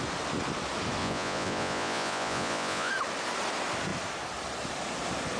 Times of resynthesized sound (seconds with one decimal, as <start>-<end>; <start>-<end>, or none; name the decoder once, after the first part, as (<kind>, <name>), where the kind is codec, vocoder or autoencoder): 1.0-2.9 (vocoder, Vocos)